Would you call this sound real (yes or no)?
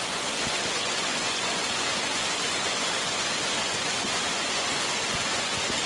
no